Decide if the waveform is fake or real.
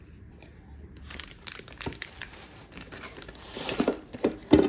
fake